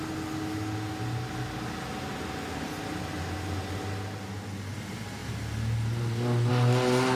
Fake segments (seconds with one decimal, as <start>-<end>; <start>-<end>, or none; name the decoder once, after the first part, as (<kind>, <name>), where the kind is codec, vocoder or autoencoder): none

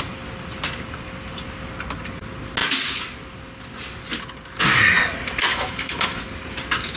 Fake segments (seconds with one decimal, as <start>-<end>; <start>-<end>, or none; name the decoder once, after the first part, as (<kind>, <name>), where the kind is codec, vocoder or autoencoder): 5.5-6.3 (autoencoder, DAC-VAE)

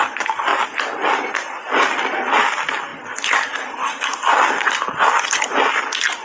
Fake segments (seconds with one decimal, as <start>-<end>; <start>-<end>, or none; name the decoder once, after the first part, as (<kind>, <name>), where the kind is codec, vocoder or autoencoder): none

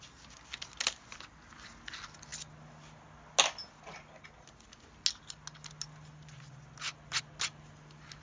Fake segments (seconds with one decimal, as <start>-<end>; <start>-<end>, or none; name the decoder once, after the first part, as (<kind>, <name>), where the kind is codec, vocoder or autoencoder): none

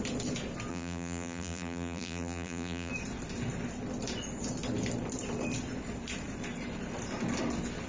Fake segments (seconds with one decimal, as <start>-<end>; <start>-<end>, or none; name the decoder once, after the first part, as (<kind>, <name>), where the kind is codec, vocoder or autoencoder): 0.7-2.9 (vocoder, BigVGAN v2)

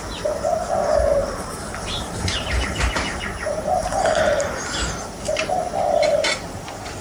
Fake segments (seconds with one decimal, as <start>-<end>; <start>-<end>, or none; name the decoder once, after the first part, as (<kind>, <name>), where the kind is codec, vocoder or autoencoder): 1.2-2.9 (vocoder, BigVGAN v2)

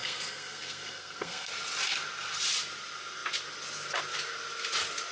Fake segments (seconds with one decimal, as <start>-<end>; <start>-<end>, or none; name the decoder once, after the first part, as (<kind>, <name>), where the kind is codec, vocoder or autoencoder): 0.0-1.5 (codec, SNAC)